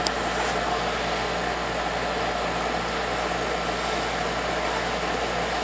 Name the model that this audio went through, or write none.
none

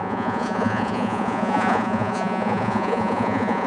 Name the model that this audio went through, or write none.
vocoder, Vocos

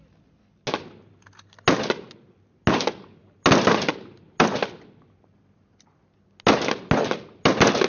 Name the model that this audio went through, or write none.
none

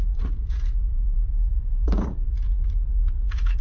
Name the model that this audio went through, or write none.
vocoder, Vocos